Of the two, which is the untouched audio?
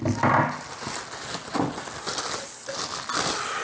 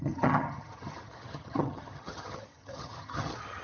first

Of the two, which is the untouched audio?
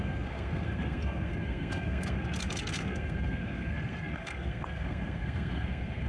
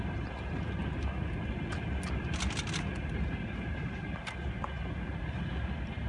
second